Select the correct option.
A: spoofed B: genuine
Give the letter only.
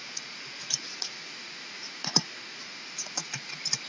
A